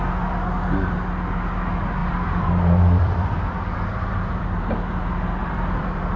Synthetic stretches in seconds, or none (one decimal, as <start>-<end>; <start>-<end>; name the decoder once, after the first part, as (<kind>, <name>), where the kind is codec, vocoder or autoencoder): 2.0-4.4 (vocoder, BigVGAN v2); 5.4-6.2